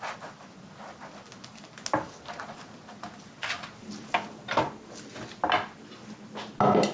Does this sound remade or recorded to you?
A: recorded